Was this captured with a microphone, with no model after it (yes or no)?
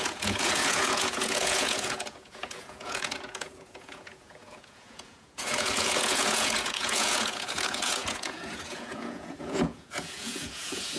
no